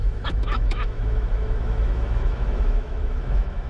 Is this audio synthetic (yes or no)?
yes